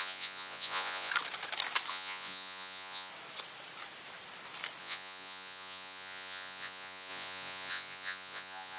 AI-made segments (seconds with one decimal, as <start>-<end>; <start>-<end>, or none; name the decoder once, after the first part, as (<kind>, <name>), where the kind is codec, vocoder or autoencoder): 0.0-1.1 (vocoder, Vocos); 1.9-3.1; 4.8-8.8